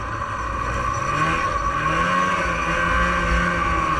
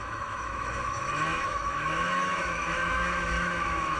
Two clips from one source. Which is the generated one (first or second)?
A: second